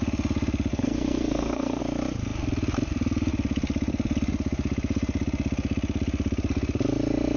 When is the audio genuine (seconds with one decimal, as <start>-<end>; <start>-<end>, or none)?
0.0-0.7; 1.8-7.4